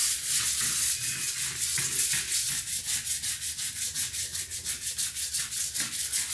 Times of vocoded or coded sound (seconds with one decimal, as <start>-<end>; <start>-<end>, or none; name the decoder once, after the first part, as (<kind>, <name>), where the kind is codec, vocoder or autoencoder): none